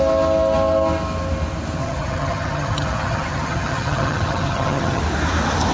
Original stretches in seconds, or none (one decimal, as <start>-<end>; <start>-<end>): 0.0-1.8; 5.0-5.7